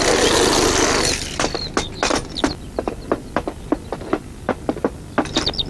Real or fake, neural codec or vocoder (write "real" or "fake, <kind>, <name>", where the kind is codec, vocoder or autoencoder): real